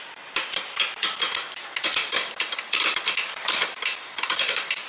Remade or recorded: recorded